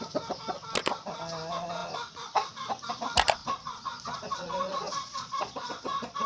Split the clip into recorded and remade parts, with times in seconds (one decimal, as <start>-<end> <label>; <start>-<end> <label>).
0.0-3.4 recorded; 3.4-6.3 remade